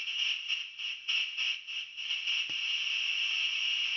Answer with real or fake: real